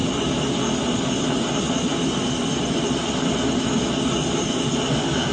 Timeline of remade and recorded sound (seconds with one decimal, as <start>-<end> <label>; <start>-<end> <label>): 0.0-3.2 remade; 3.2-5.3 recorded